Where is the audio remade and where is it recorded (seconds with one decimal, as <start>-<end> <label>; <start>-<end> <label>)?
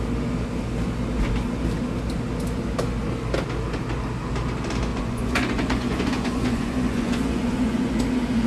0.0-4.9 recorded; 4.9-8.0 remade; 8.0-8.5 recorded